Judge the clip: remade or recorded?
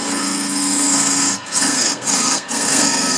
remade